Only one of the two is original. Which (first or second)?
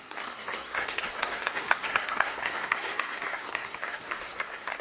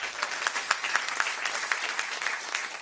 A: second